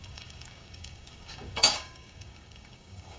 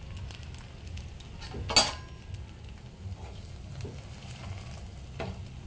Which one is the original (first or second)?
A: second